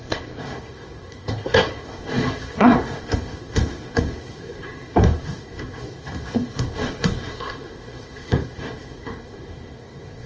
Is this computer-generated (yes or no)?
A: yes